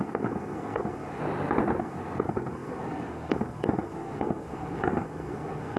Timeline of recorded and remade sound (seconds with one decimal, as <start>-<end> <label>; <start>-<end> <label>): 0.0-1.2 remade; 1.2-1.8 recorded; 1.8-5.8 remade